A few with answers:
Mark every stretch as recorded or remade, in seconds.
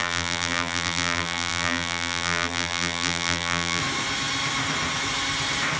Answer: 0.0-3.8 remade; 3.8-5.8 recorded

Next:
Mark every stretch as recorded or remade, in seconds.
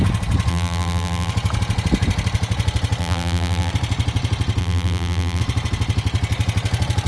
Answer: 0.0-0.5 recorded; 0.5-1.3 remade; 1.3-3.0 recorded; 3.0-3.7 remade; 3.7-4.6 recorded; 4.6-5.4 remade; 5.4-7.1 recorded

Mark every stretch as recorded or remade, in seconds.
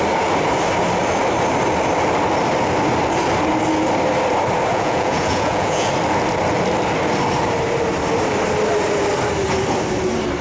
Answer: 0.0-4.7 recorded; 4.7-5.9 remade; 5.9-10.4 recorded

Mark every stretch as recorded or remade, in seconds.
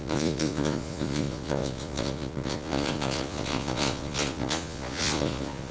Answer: 0.0-5.7 remade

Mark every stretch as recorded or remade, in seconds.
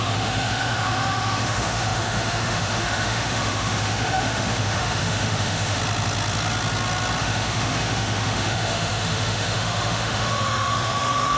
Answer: 0.0-5.8 remade; 5.8-7.2 recorded; 7.2-11.4 remade